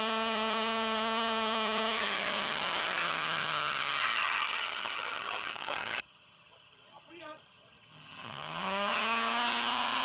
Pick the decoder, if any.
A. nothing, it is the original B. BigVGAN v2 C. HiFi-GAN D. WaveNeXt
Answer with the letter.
C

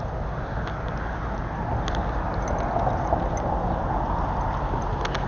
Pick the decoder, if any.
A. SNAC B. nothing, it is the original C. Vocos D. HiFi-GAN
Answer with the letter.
B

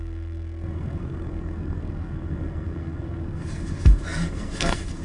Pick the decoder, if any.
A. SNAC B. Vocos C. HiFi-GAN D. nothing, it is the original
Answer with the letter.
A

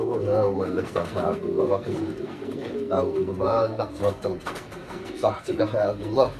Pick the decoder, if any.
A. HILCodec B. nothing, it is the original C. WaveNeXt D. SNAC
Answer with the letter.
D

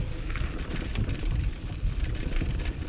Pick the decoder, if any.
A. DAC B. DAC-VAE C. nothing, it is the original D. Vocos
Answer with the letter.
C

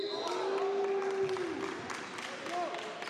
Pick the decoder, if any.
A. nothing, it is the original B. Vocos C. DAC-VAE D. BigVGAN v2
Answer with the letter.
A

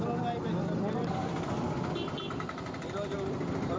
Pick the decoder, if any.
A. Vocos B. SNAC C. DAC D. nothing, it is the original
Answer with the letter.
D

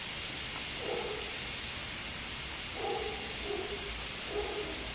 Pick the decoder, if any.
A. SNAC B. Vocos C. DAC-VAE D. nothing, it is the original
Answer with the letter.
D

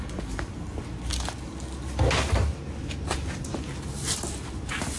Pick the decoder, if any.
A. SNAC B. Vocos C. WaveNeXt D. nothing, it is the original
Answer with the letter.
D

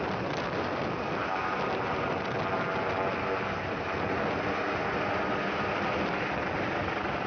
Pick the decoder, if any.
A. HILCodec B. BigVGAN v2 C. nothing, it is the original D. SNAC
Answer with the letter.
C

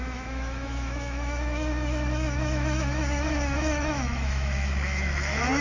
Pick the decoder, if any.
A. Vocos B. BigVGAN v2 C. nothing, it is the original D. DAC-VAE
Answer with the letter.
D